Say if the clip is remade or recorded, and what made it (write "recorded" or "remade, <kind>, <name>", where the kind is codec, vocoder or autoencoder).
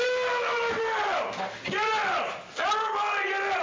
recorded